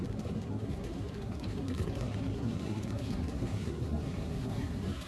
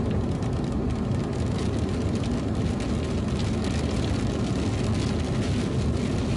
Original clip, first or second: second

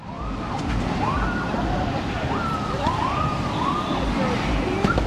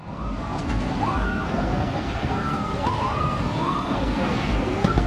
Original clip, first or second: first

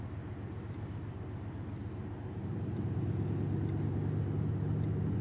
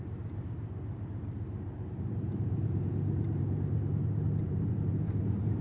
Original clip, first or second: first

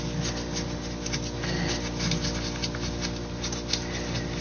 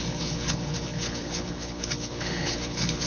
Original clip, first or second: first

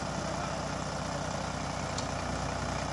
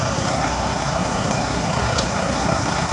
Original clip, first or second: first